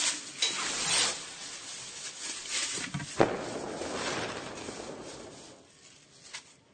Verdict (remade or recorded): recorded